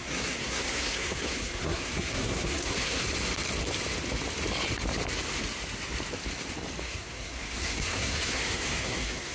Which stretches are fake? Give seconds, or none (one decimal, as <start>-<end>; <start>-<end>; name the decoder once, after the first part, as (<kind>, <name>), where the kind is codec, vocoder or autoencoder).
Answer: 0.0-3.0 (codec, SNAC); 6.8-9.3